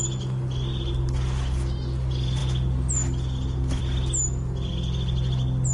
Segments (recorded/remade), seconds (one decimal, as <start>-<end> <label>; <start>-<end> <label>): 0.0-5.7 recorded